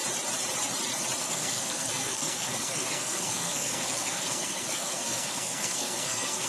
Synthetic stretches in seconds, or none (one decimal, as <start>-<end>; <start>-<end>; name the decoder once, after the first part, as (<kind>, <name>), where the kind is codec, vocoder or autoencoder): 1.2-6.5 (codec, SNAC)